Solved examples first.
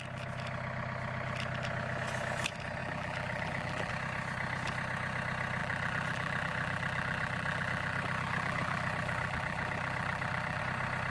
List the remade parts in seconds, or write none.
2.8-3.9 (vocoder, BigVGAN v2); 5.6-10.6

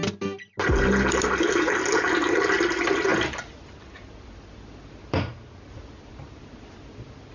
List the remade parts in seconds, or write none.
none